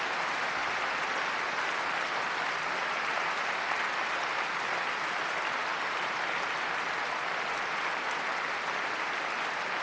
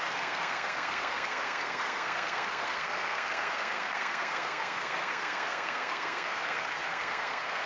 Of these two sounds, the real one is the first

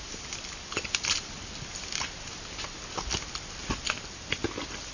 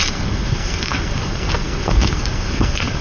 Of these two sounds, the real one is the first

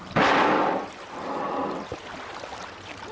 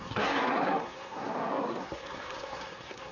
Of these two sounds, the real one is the first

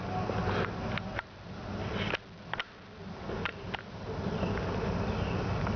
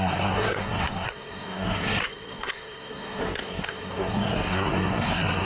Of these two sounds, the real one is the first